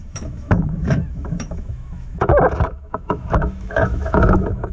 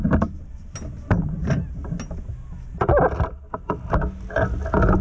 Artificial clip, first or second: first